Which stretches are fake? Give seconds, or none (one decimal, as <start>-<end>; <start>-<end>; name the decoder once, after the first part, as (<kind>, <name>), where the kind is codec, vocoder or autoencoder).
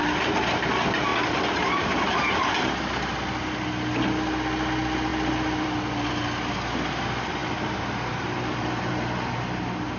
5.1-6.1 (vocoder, BigVGAN v2); 7.4-8.9